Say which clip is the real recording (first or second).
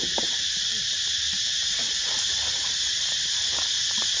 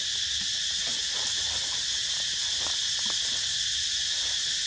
second